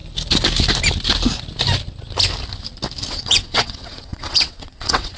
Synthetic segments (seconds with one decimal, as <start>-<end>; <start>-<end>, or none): 3.1-5.2